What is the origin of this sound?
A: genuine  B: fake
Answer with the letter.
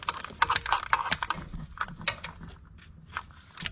A